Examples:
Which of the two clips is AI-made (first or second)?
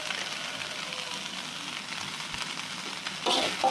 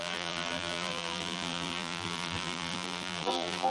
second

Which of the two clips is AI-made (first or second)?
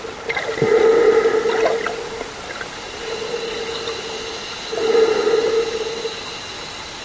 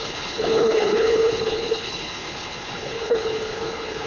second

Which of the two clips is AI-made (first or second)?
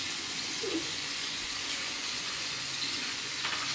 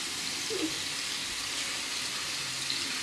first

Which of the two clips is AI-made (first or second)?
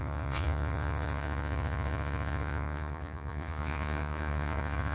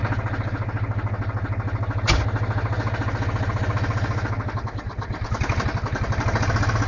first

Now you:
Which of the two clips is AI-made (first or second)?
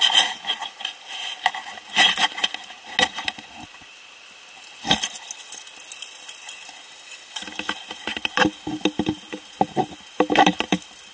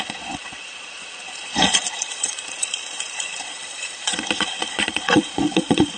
second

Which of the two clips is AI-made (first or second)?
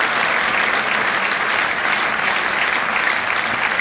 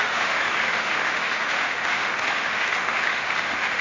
second